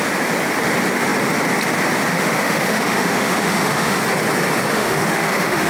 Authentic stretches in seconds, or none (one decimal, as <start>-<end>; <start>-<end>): 0.0-2.1; 4.0-4.7